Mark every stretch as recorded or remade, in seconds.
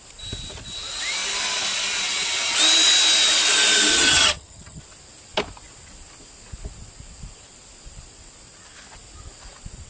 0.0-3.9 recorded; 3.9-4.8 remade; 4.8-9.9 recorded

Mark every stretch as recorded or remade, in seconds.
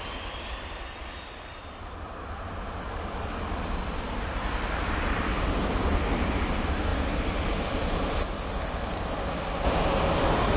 0.0-10.6 recorded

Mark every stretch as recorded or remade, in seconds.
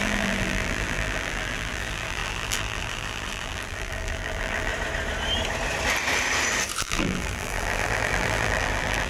0.0-4.7 remade; 4.7-6.8 recorded; 6.8-9.1 remade